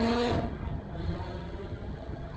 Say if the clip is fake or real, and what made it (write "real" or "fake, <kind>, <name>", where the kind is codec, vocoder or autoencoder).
fake, vocoder, HiFi-GAN